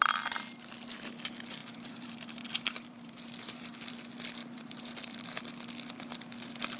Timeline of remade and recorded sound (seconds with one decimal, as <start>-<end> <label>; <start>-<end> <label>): 0.0-1.6 recorded; 1.6-3.9 remade; 3.9-4.4 recorded; 4.4-5.4 remade; 5.4-6.8 recorded